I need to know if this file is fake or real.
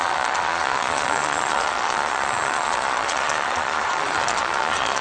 fake